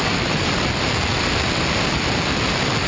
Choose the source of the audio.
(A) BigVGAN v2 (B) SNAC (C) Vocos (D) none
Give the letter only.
D